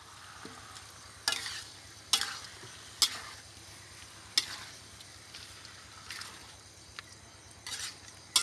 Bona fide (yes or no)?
yes